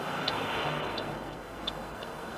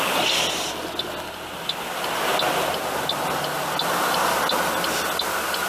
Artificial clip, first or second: first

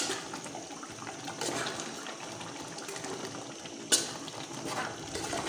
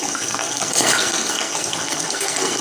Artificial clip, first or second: second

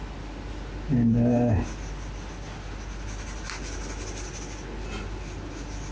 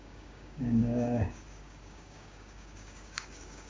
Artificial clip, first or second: second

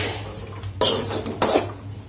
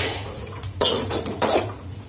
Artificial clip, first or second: second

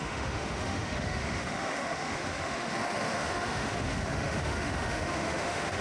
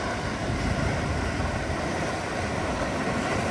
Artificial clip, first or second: first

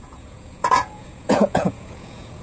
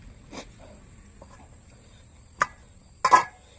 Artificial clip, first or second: first